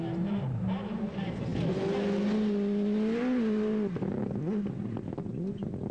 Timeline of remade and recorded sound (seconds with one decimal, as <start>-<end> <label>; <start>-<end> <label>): 0.0-5.9 recorded